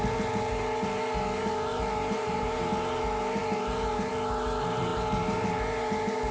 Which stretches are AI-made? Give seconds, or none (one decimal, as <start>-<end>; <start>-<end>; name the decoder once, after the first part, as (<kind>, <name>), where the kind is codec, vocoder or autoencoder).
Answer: 1.7-2.6 (vocoder, BigVGAN v2); 4.9-6.3